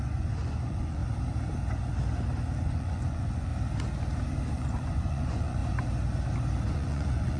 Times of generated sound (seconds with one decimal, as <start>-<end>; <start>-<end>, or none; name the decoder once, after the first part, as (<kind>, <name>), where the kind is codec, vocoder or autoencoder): 0.0-1.0 (vocoder, Vocos); 2.6-3.5; 4.5-5.6; 6.7-7.4